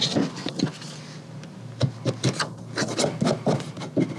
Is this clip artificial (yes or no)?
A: no